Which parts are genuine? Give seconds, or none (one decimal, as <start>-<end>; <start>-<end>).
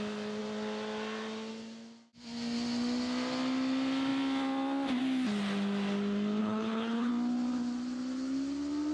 0.0-6.4; 7.1-8.9